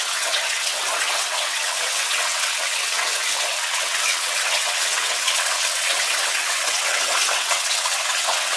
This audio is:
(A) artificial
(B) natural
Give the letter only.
A